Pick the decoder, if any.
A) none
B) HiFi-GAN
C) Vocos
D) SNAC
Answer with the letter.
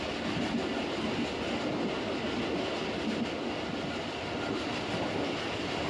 A